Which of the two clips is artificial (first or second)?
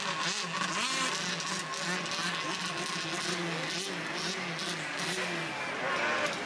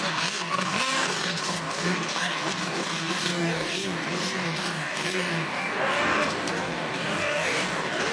second